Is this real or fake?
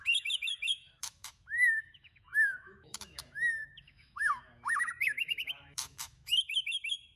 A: fake